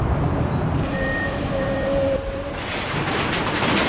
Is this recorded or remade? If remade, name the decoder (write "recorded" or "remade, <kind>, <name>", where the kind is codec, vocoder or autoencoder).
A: remade, vocoder, BigVGAN v2